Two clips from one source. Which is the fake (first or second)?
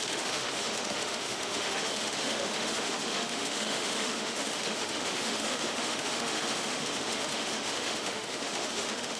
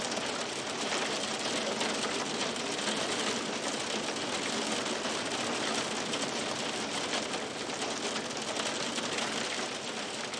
first